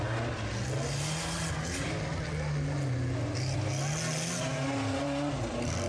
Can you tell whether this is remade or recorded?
recorded